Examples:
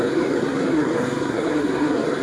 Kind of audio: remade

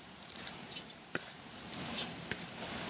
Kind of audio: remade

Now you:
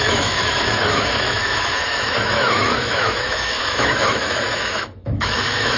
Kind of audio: remade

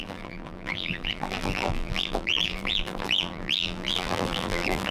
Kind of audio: remade